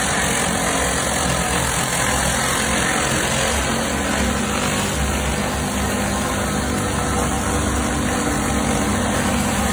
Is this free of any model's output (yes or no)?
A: yes